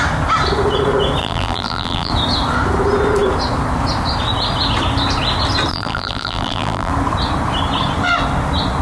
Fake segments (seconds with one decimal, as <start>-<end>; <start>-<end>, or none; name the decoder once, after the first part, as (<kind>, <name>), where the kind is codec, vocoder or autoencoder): 1.2-2.1 (vocoder, BigVGAN v2); 5.7-6.9